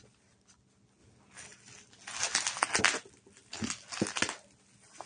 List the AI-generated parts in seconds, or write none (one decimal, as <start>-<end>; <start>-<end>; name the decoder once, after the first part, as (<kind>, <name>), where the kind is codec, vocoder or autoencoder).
none